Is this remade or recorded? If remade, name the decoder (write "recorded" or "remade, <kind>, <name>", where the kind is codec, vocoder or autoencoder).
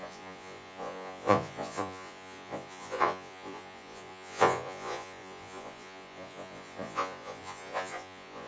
remade, vocoder, Vocos